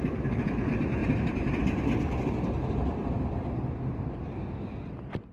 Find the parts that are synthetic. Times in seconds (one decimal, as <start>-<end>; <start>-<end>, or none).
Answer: none